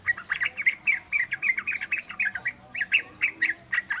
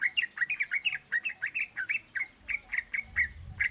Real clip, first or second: second